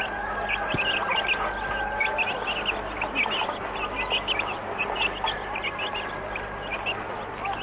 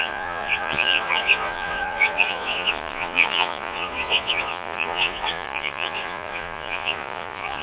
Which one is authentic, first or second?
first